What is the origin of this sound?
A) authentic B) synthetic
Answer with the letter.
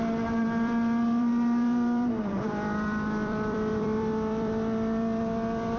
B